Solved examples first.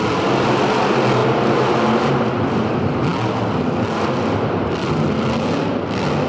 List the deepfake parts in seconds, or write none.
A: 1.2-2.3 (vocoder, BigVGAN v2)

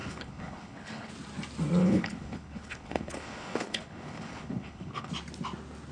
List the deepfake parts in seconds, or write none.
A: 0.0-1.1 (codec, HILCodec); 1.8-5.1

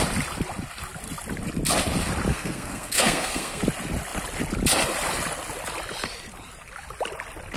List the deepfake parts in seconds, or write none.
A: 2.3-3.6 (codec, SNAC)

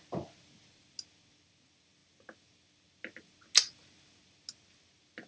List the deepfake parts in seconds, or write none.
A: none

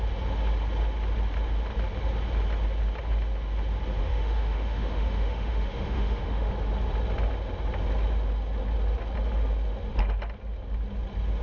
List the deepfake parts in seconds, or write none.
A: 4.0-6.5 (autoencoder, DAC-VAE)

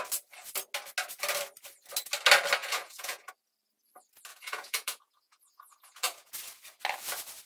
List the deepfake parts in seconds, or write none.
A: 2.6-3.3 (vocoder, Vocos); 4.3-6.3

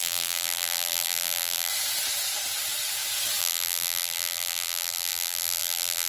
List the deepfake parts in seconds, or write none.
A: 0.0-1.7 (vocoder, BigVGAN v2); 3.4-6.1

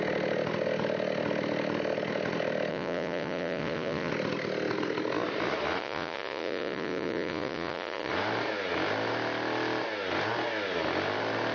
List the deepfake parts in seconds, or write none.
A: 2.7-4.1 (vocoder, Vocos); 5.8-8.1